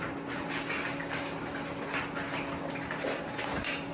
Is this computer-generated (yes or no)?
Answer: no